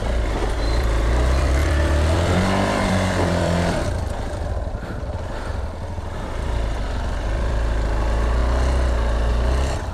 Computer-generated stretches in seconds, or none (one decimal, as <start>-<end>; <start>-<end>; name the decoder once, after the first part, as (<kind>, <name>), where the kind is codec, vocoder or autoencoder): 0.0-8.4 (vocoder, BigVGAN v2); 9.3-9.9